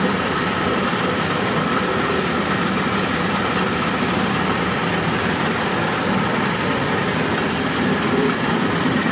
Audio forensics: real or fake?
fake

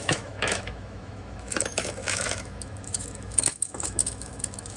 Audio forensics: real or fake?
fake